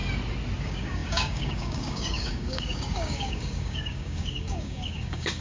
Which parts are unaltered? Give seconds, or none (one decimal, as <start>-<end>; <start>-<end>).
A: 0.0-0.6